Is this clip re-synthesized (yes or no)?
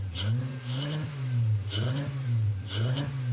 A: yes